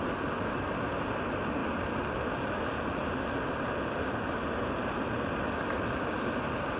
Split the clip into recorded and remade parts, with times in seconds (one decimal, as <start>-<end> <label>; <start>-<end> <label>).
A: 0.0-6.8 recorded